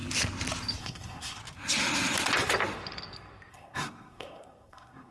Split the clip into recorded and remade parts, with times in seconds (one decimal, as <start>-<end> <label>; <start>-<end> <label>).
0.0-0.8 recorded; 0.8-1.4 remade; 1.4-3.5 recorded; 3.5-5.1 remade